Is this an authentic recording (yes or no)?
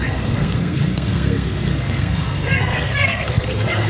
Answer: no